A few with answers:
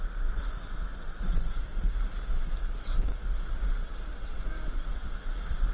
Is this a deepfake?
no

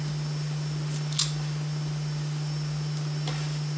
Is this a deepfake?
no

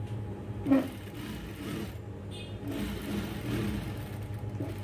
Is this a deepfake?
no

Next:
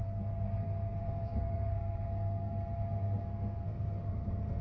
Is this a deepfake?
yes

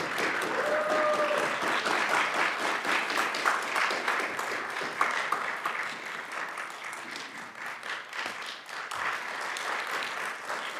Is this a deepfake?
no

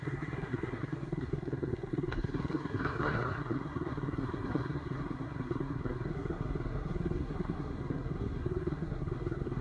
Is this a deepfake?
yes